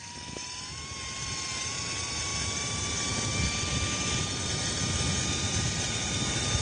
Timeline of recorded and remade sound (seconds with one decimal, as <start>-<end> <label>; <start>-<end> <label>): 0.0-6.6 recorded